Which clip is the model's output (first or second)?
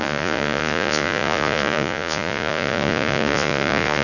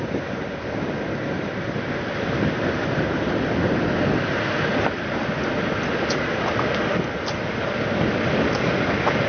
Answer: first